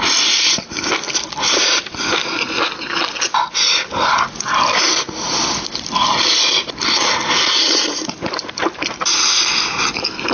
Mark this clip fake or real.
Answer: fake